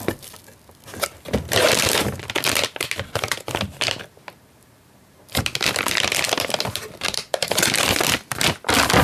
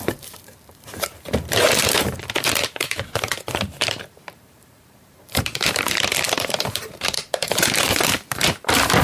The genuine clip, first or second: first